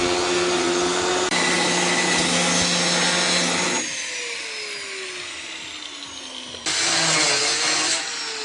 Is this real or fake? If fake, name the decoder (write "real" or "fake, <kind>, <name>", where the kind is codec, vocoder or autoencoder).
real